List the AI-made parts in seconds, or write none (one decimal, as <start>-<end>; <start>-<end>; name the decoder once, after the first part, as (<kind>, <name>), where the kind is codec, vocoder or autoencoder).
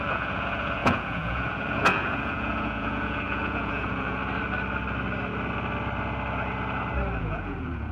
0.0-4.2 (vocoder, Vocos); 7.2-7.9